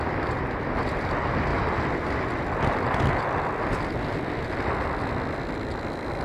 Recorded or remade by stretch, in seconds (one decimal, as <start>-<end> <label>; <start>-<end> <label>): 0.0-6.2 recorded